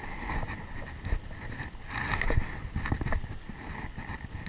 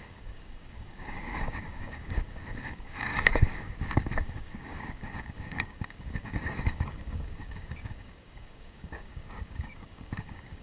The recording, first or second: first